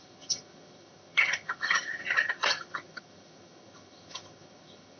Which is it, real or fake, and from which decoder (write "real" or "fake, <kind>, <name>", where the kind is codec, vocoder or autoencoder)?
fake, vocoder, HiFi-GAN